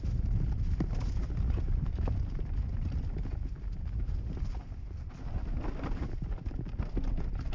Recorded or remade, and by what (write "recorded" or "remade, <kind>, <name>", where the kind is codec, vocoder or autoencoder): recorded